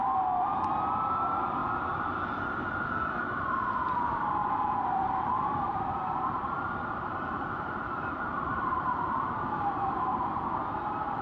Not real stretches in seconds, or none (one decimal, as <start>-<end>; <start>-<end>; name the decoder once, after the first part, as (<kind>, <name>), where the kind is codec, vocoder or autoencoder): 0.0-1.6 (vocoder, BigVGAN v2); 4.0-11.2